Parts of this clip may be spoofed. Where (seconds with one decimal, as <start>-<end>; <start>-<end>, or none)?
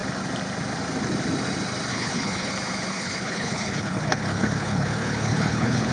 1.9-2.5; 2.9-5.9